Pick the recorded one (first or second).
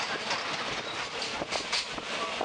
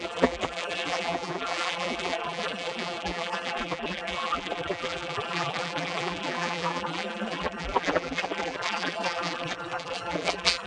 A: first